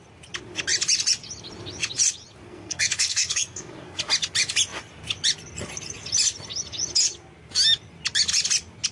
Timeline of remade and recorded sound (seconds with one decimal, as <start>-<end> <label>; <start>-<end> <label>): 0.0-2.4 recorded; 2.4-4.0 remade; 4.0-8.9 recorded